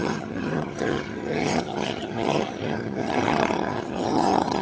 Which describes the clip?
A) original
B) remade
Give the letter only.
B